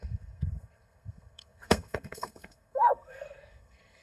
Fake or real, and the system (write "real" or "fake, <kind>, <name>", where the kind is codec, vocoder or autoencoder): fake, codec, SNAC